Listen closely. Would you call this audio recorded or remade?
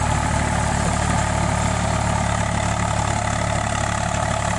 recorded